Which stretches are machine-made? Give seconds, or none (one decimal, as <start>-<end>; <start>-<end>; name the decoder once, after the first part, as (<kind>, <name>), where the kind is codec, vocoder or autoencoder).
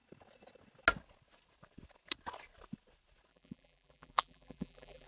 3.3-5.1 (vocoder, BigVGAN v2)